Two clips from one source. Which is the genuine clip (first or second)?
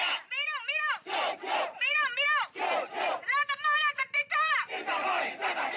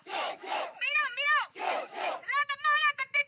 first